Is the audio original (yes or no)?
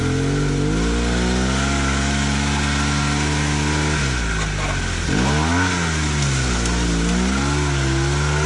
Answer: yes